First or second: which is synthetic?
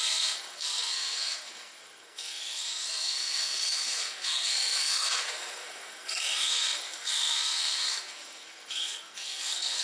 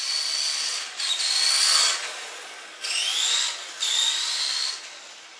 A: first